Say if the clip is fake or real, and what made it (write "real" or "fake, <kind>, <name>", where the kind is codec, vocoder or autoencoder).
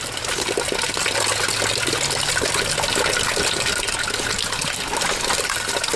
real